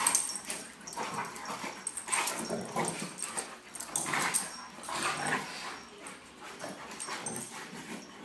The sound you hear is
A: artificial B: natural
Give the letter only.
B